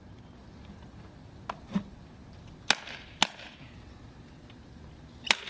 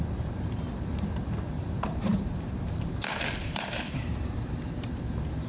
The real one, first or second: first